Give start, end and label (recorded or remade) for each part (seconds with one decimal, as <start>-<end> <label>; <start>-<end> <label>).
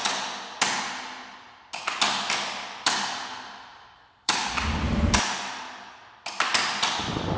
0.0-3.7 recorded; 3.7-5.6 remade; 5.6-7.4 recorded